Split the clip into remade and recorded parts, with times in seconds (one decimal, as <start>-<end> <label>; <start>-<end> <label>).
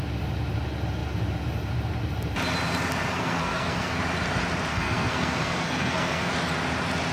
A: 0.0-3.1 recorded; 3.1-4.0 remade; 4.0-4.7 recorded; 4.7-6.3 remade; 6.3-7.1 recorded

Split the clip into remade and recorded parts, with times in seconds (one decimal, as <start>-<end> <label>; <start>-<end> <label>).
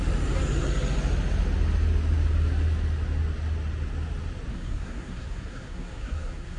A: 0.0-4.5 recorded; 4.5-6.6 remade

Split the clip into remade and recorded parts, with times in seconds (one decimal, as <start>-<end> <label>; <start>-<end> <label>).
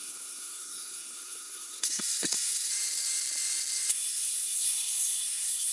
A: 0.0-2.7 remade; 2.7-3.9 recorded; 3.9-5.7 remade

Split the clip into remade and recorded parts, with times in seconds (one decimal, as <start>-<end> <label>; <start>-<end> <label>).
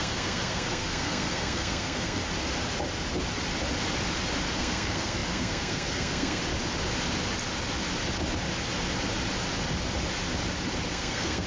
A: 0.0-2.2 remade; 2.2-4.6 recorded; 4.6-6.4 remade; 6.4-10.9 recorded; 10.9-11.5 remade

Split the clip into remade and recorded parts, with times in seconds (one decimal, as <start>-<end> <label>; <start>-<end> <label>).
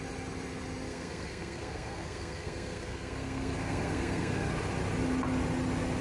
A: 0.0-0.9 recorded; 0.9-4.5 remade; 4.5-6.0 recorded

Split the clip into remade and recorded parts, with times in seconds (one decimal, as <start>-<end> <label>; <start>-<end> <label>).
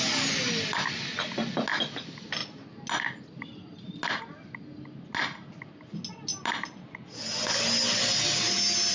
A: 0.0-8.9 recorded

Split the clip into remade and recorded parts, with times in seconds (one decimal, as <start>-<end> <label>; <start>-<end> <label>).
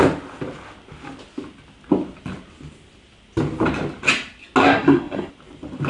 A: 0.0-4.6 recorded; 4.6-5.3 remade; 5.3-5.9 recorded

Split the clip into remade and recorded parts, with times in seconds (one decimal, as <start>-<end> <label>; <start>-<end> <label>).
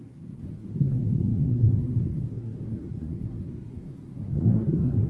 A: 0.0-5.1 remade